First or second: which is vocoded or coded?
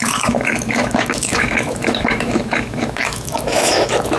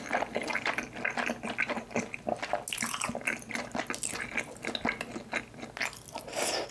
first